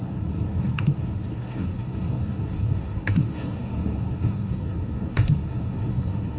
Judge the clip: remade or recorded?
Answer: remade